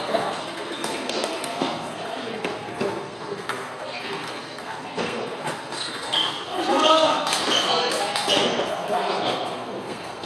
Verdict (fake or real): fake